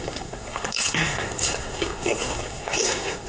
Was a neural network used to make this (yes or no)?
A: yes